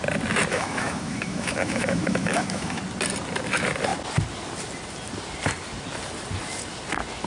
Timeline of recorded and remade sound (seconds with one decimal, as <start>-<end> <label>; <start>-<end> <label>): 0.0-0.5 recorded; 0.5-2.8 remade; 2.8-7.3 recorded